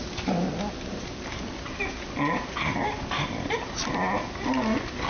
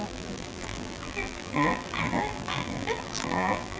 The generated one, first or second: second